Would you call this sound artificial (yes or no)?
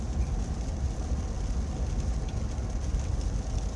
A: no